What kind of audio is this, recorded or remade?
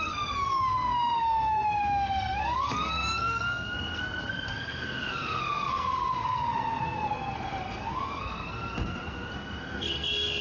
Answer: remade